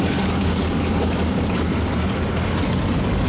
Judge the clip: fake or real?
fake